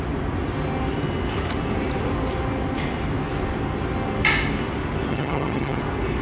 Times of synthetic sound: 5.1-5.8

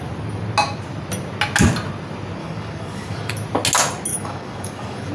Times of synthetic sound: 2.4-3.3; 4.1-5.1